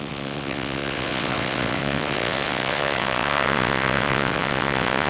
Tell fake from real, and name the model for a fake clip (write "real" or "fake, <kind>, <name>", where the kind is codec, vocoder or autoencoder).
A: fake, vocoder, WaveNeXt